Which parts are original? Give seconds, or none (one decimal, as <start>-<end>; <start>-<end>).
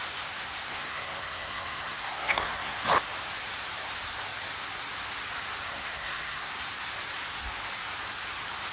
0.0-0.7; 2.8-5.6; 6.5-8.7